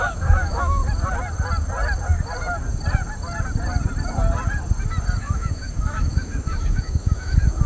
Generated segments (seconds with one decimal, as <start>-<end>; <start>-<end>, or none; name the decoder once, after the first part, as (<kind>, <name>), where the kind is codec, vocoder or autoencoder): 0.0-0.8 (autoencoder, DAC-VAE); 5.2-7.7

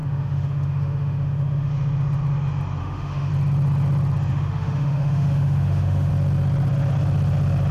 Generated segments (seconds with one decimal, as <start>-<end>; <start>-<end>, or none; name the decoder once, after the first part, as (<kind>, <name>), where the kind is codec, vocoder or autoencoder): 0.0-1.7 (autoencoder, DAC-VAE); 2.8-3.3; 4.3-6.1

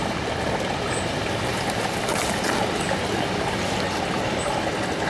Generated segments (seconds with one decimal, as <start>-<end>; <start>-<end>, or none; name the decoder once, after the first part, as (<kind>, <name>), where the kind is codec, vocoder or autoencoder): none